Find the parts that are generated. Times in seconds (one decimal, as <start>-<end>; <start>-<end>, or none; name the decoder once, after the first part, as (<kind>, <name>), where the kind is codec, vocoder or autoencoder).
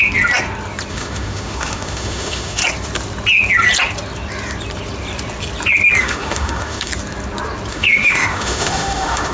0.9-2.6 (autoencoder, DAC-VAE); 6.0-6.9; 7.7-9.3